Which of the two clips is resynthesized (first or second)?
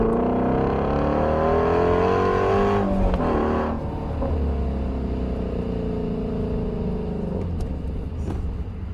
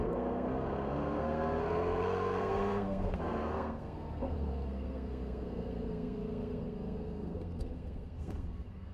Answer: second